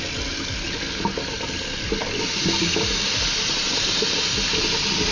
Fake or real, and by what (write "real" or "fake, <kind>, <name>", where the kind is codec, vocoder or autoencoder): real